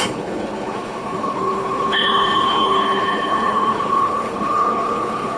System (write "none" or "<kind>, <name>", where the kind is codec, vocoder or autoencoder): codec, HILCodec